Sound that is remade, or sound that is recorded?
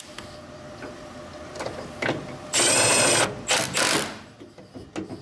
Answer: recorded